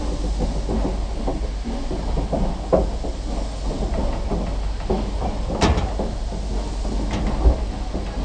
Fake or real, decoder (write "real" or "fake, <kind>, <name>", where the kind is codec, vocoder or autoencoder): real